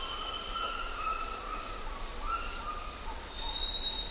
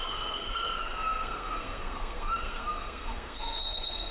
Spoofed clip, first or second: second